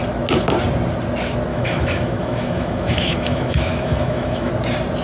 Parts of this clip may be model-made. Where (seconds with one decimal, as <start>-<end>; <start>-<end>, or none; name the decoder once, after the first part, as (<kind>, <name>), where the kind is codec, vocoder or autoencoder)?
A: 1.5-4.5 (autoencoder, DAC-VAE)